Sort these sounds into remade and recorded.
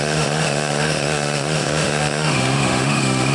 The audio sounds remade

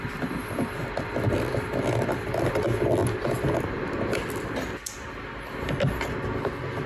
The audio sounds recorded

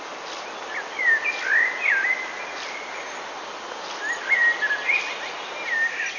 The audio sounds recorded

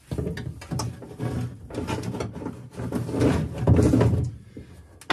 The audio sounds recorded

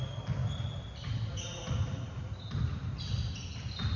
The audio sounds recorded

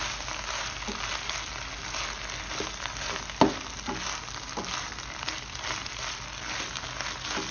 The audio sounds recorded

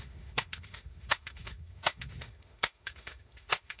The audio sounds remade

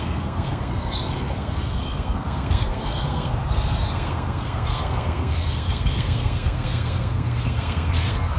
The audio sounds remade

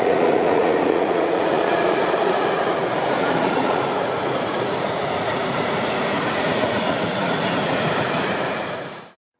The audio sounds remade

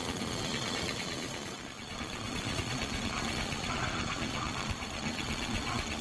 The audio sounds remade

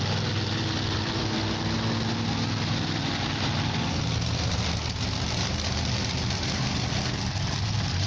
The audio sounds recorded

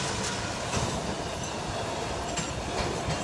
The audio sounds recorded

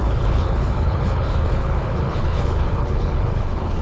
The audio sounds remade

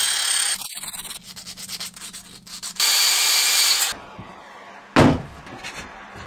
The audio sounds recorded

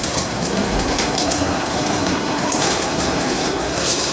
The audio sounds remade